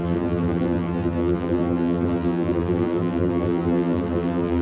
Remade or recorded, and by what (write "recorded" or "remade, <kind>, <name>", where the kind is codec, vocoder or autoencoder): remade, vocoder, BigVGAN v2